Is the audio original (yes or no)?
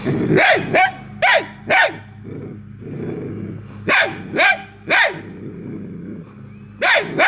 yes